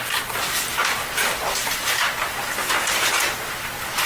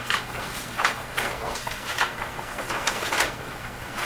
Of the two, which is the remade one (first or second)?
second